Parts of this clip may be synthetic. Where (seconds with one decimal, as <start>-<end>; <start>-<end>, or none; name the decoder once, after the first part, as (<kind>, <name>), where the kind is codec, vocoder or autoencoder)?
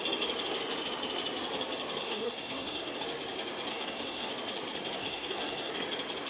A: 2.0-3.0 (codec, SNAC); 3.7-4.3; 5.0-5.7